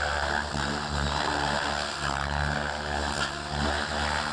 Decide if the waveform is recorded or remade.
recorded